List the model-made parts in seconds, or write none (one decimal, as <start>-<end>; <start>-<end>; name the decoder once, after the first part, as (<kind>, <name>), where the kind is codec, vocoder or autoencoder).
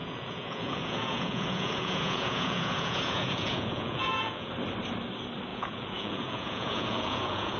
0.0-4.5 (vocoder, Vocos); 5.5-7.6